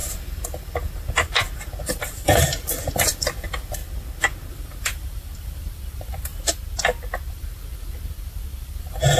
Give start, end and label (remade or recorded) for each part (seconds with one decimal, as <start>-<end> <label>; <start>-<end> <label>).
0.0-1.9 recorded; 1.9-3.8 remade; 3.8-4.5 recorded; 4.5-6.3 remade; 6.3-7.3 recorded; 7.3-9.2 remade